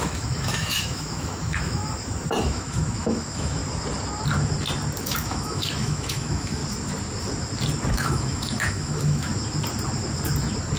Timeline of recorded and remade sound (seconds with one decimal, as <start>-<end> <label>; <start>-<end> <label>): 0.0-1.8 remade; 1.8-2.4 recorded; 2.4-3.6 remade; 3.6-5.0 recorded; 5.0-6.6 remade; 6.6-7.9 recorded; 7.9-9.3 remade; 9.3-10.8 recorded